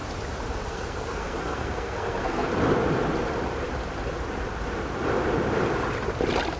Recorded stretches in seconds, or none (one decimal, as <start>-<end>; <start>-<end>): 0.0-0.7; 2.5-6.6